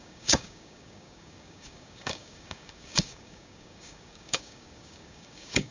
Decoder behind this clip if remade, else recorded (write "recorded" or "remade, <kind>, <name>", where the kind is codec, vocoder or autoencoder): remade, codec, DAC